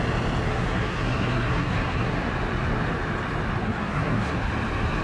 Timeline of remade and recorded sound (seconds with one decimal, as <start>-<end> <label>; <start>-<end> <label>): 0.0-0.5 recorded; 0.5-2.3 remade; 2.3-3.6 recorded; 3.6-4.5 remade; 4.5-5.0 recorded

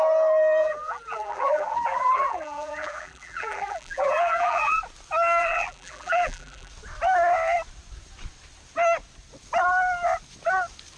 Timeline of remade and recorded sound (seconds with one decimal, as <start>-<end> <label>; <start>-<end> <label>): 0.0-0.6 recorded; 0.6-4.8 remade; 4.8-5.4 recorded; 5.4-6.7 remade; 6.7-11.0 recorded

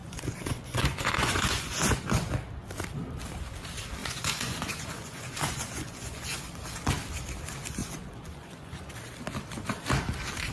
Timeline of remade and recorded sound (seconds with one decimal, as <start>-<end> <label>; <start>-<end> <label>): 0.0-2.3 remade; 2.3-4.0 recorded; 4.0-6.4 remade; 6.4-7.8 recorded; 7.8-8.9 remade; 8.9-10.5 recorded

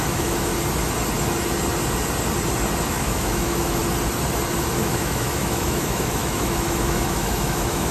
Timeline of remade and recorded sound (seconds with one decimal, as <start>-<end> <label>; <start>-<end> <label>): 0.0-0.5 remade; 0.5-2.9 recorded; 2.9-3.8 remade; 3.8-4.7 recorded; 4.7-7.9 remade

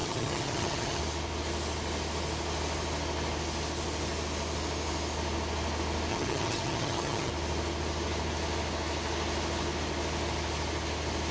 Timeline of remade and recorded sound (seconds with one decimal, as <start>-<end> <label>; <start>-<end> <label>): 0.0-1.0 remade; 1.0-6.1 recorded; 6.1-7.3 remade; 7.3-11.3 recorded

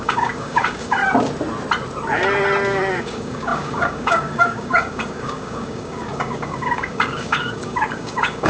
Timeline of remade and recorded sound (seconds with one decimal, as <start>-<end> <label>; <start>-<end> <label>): 0.0-1.0 remade; 1.0-3.0 recorded; 3.0-8.5 remade